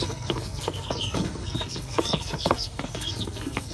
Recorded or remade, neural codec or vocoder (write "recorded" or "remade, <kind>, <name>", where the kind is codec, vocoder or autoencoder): remade, codec, SNAC